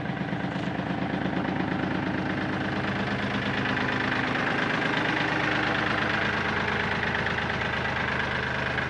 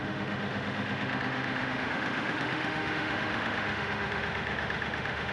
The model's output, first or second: second